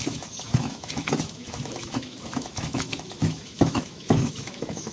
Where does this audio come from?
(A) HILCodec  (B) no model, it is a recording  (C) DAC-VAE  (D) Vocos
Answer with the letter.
C